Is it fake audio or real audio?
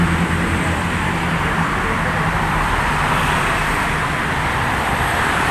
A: fake